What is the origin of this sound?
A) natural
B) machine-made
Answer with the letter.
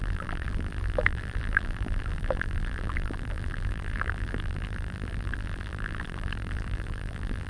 B